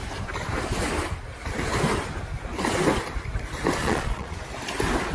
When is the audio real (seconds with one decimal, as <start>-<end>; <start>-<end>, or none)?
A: 0.0-3.8; 4.4-5.1

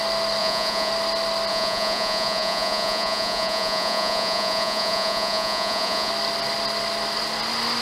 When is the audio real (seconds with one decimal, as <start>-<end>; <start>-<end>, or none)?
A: 0.0-0.4; 0.9-1.5; 6.1-7.8

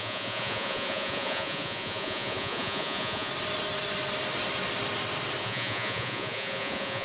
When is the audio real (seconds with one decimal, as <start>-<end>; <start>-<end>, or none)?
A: 3.3-5.4